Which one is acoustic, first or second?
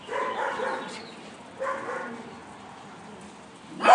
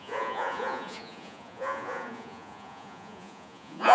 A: first